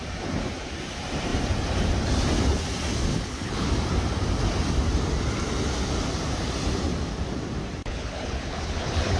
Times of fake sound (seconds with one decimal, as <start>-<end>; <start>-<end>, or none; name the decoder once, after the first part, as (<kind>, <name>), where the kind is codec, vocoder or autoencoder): 3.1-3.7 (codec, HILCodec); 7.8-9.2